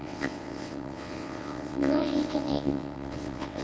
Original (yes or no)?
no